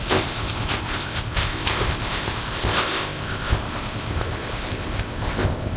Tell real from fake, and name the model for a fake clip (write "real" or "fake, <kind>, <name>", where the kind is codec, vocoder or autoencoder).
fake, codec, ZipCodec